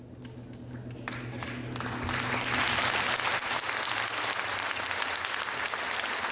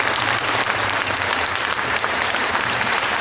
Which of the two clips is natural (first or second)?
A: first